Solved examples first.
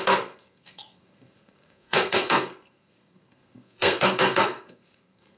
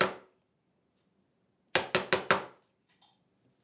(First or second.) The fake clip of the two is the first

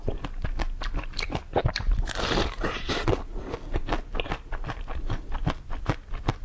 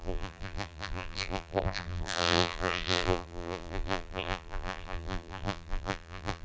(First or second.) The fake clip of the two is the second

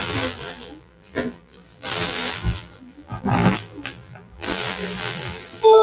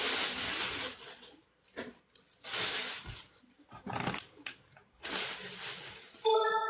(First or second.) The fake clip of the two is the first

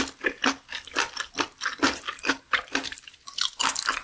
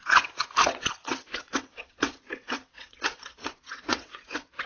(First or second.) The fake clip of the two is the second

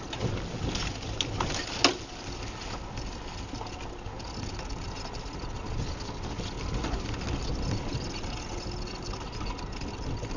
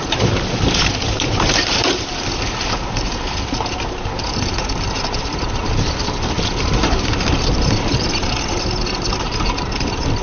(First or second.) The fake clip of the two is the second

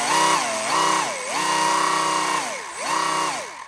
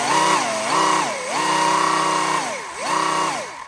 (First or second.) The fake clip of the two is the second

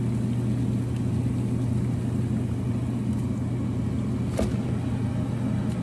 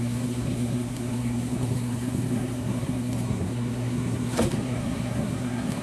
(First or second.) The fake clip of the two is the second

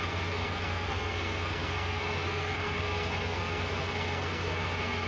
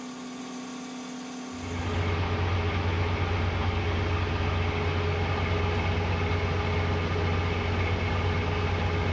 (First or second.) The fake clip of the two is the first